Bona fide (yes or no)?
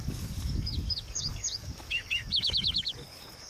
no